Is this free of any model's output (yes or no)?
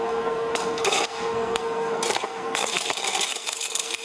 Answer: no